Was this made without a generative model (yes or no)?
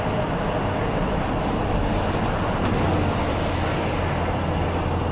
yes